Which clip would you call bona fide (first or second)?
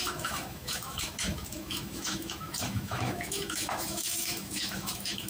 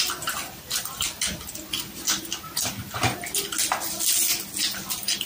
second